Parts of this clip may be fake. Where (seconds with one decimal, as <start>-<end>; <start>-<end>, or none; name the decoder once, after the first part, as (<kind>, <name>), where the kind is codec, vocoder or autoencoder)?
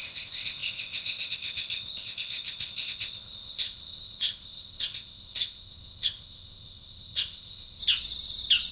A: 0.0-7.8 (codec, ZipCodec)